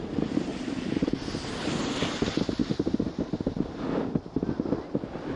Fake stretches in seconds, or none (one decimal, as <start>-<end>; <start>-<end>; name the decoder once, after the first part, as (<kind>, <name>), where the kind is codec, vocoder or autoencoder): 0.5-1.2 (vocoder, BigVGAN v2); 2.6-3.8

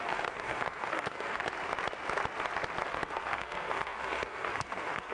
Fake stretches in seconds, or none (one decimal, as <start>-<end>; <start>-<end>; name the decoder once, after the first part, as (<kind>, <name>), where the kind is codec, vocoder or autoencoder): 0.0-1.4 (codec, SNAC); 2.9-5.1